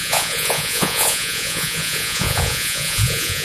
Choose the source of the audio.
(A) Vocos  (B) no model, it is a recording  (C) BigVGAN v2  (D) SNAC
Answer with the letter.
A